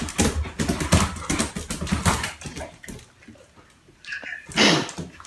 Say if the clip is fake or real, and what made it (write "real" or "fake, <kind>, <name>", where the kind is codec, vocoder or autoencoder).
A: real